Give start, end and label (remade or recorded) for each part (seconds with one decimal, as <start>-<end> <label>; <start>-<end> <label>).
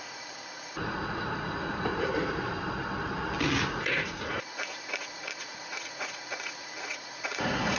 0.0-2.1 remade; 2.1-3.7 recorded; 3.7-7.8 remade